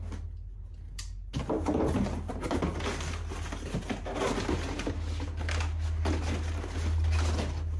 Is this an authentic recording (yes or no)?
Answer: yes